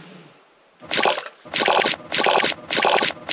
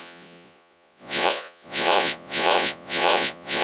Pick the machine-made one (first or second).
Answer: second